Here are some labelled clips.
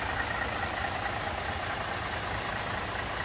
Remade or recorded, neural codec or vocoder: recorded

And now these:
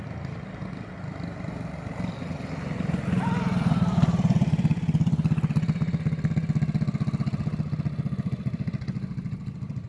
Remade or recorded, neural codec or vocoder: recorded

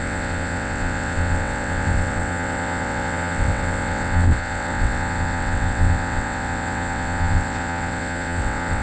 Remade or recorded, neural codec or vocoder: remade, vocoder, WaveNeXt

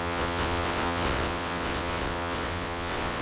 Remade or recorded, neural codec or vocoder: remade, vocoder, WaveNeXt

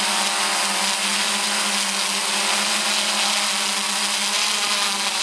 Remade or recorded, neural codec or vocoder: recorded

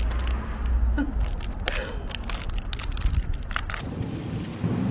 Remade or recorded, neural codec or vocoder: recorded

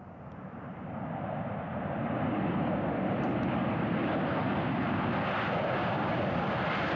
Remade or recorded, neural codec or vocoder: recorded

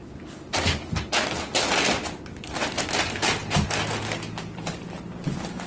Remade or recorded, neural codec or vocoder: recorded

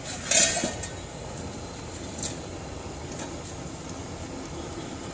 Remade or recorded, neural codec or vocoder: recorded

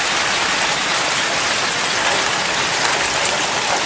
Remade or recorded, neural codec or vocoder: recorded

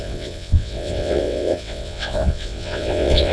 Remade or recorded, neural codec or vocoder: remade, vocoder, WaveNeXt